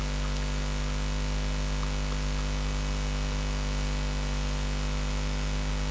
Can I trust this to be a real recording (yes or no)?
yes